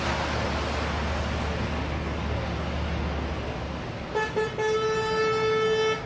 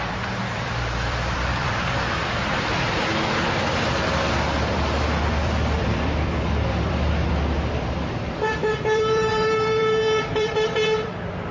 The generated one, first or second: second